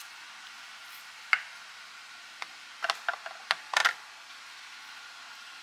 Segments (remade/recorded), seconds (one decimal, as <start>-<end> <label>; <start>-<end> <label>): 0.0-5.6 recorded